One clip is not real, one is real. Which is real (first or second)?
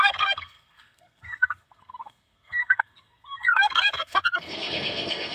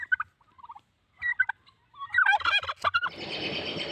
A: second